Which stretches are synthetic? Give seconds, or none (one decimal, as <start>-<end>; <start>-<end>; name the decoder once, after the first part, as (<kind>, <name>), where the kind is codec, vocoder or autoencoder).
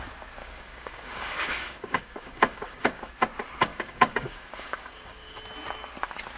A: 0.4-3.1 (codec, DAC); 3.7-5.4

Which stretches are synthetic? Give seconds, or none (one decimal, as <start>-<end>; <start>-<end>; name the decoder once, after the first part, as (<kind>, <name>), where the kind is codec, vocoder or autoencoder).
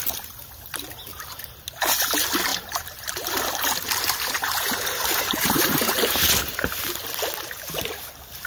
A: 1.1-2.1 (vocoder, BigVGAN v2); 2.5-6.9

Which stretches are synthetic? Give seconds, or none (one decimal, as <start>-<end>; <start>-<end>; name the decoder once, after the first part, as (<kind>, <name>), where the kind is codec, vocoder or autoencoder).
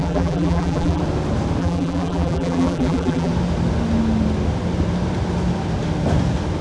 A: 0.0-1.0 (vocoder, BigVGAN v2); 1.6-3.3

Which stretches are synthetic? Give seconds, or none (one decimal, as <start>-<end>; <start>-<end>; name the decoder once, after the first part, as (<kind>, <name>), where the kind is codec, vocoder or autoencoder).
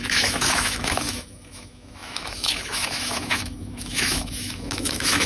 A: 0.0-5.3 (autoencoder, DAC-VAE)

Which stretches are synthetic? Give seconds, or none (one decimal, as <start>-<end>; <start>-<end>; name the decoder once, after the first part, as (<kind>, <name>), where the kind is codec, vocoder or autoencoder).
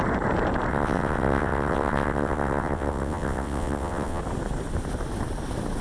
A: 0.7-4.2 (vocoder, WaveNeXt)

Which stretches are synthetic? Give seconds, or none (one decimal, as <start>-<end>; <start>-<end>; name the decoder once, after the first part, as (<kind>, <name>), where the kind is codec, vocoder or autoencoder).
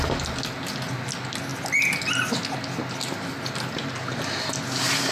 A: none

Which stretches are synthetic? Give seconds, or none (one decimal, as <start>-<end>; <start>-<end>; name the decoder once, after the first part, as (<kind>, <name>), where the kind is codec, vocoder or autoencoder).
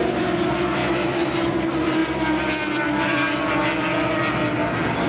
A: 0.8-1.3 (autoencoder, DAC-VAE)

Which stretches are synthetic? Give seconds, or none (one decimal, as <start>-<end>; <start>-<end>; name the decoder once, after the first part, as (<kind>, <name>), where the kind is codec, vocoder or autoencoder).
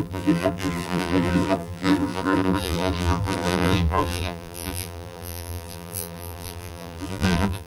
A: 0.0-7.7 (vocoder, BigVGAN v2)